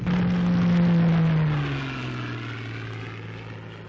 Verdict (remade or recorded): recorded